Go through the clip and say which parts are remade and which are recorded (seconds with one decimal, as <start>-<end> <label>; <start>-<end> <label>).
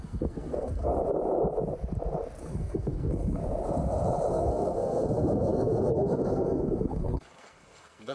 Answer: 0.0-0.9 remade; 0.9-2.4 recorded; 2.4-3.4 remade; 3.4-4.3 recorded; 4.3-8.1 remade